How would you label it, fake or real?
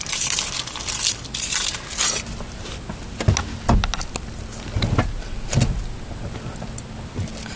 real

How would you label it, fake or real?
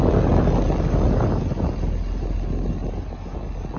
real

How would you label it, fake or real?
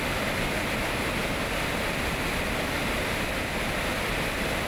real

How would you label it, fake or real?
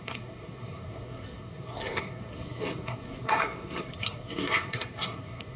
fake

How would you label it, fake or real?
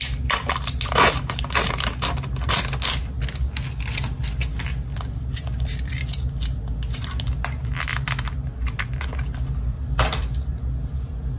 real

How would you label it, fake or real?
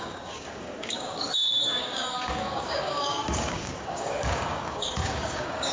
fake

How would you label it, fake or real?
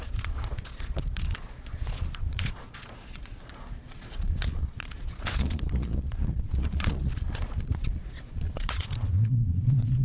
fake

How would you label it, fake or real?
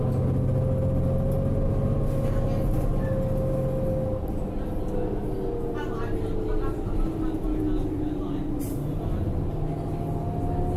real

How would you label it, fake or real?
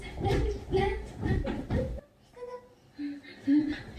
real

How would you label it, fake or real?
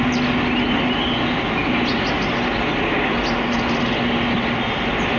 real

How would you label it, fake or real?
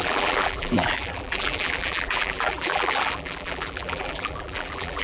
fake